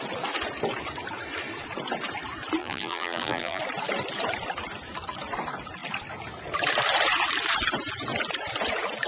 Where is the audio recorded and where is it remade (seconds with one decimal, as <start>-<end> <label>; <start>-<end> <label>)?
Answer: 0.0-2.6 recorded; 2.6-3.6 remade; 3.6-9.1 recorded